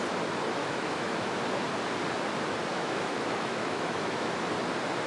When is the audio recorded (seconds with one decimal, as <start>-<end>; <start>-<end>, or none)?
0.0-0.6; 1.3-2.7; 4.5-5.1